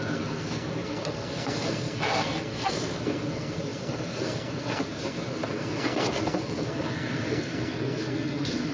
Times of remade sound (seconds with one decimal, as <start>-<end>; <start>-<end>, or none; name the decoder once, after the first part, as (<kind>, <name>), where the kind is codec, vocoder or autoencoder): 0.0-8.7 (codec, SNAC)